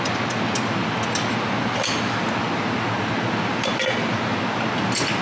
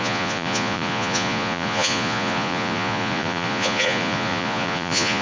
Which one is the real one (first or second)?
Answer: first